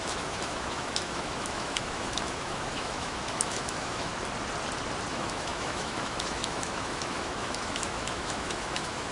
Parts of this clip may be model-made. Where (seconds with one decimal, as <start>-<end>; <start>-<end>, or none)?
0.0-4.1; 5.1-9.1